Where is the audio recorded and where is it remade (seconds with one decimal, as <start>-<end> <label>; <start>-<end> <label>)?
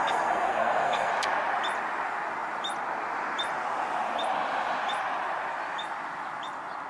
0.0-1.1 remade; 1.1-6.9 recorded